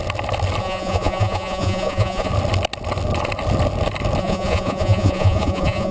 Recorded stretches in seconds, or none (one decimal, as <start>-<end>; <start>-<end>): 0.0-0.6; 2.3-4.2